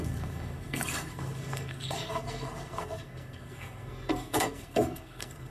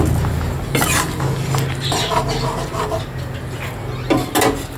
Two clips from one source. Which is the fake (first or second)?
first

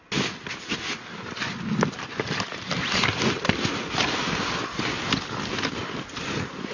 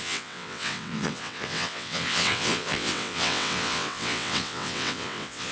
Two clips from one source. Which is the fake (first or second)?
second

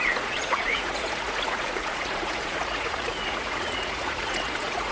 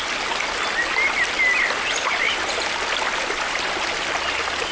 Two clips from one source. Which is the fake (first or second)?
first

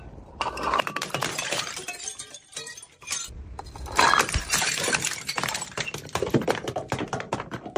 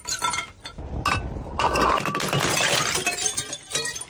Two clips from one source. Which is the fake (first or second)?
first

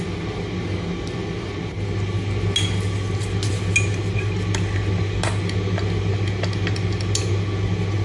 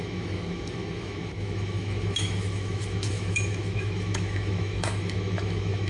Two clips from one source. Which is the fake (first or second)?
second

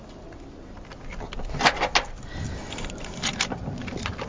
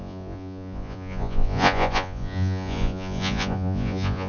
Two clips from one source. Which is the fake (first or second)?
second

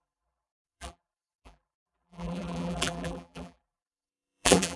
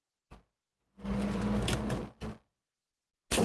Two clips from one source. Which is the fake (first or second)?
first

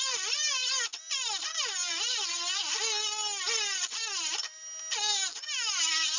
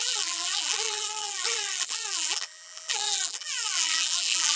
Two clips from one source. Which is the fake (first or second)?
second